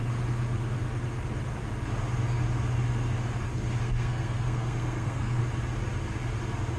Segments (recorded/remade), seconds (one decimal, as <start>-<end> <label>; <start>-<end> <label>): 0.0-3.8 recorded; 3.8-5.4 remade; 5.4-6.8 recorded